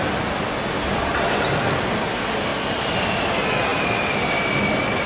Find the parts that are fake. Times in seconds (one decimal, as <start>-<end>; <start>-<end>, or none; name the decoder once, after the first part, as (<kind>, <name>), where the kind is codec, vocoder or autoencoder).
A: none